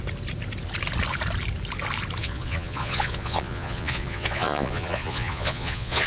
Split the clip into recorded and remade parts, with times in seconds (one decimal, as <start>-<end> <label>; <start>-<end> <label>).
0.0-2.2 recorded; 2.2-6.1 remade